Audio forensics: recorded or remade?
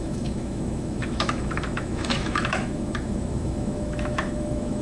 remade